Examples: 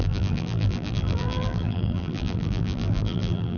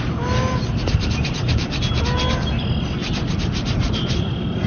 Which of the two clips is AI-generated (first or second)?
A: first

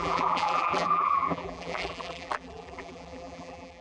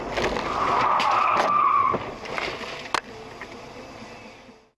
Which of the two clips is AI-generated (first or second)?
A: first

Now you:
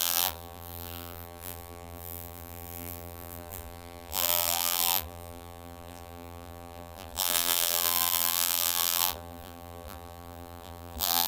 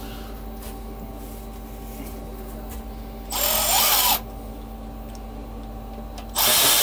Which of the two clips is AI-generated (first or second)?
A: first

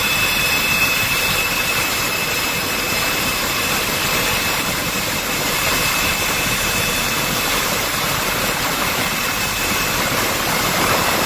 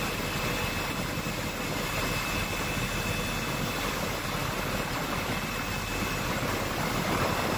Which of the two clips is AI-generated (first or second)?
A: first